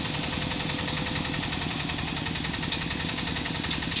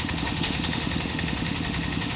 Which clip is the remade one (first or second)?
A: second